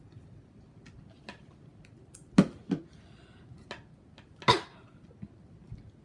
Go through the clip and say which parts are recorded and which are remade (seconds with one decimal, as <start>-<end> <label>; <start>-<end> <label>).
0.0-6.0 recorded